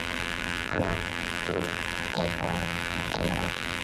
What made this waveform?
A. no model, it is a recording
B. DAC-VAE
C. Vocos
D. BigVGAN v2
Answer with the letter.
D